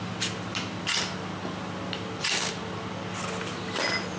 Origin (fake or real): real